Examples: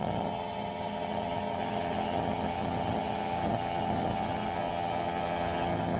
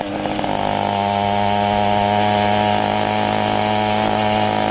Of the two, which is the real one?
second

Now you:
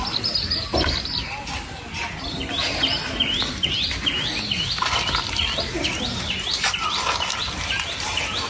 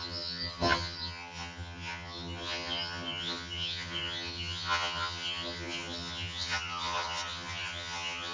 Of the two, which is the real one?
first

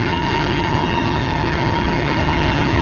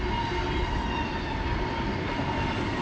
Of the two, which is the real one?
second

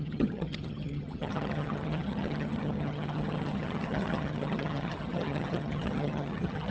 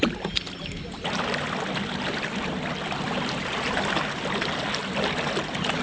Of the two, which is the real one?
second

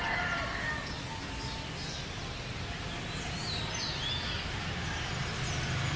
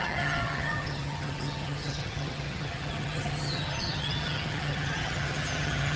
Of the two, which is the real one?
first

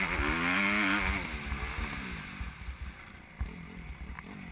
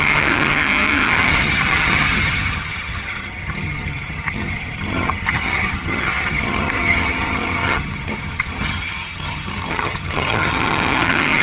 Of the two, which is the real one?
first